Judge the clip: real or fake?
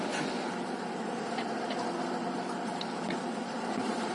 fake